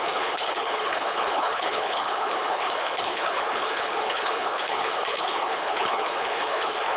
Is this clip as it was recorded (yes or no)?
no